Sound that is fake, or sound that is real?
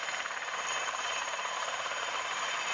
fake